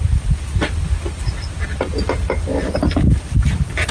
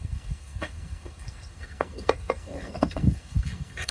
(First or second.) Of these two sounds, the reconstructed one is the second